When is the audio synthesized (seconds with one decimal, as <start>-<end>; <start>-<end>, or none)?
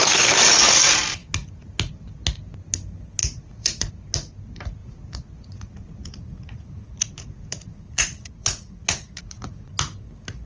3.2-3.9; 4.8-9.7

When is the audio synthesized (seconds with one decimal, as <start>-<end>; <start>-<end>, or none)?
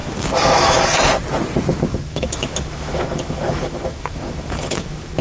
0.0-0.8; 1.9-5.2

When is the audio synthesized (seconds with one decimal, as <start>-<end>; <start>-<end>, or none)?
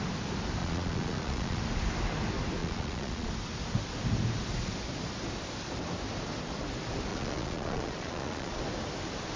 0.6-1.6; 2.6-3.3; 7.1-8.6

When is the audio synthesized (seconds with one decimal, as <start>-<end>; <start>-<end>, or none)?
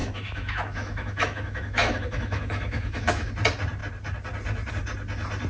0.0-3.3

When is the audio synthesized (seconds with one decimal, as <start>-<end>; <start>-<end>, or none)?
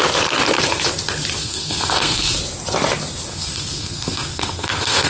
1.4-2.3; 3.3-5.1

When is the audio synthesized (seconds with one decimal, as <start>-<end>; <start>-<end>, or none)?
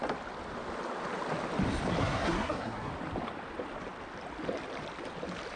2.0-2.9